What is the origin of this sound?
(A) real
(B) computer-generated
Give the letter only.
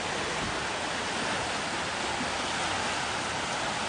A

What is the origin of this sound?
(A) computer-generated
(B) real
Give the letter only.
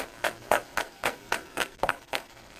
A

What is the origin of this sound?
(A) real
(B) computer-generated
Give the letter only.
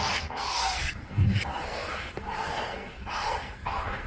B